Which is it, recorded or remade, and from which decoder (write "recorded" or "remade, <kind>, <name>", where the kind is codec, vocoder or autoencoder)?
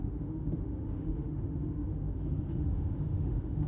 remade, autoencoder, DAC-VAE